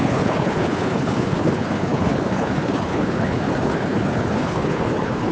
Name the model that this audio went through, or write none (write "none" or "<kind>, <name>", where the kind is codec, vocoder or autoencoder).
codec, HILCodec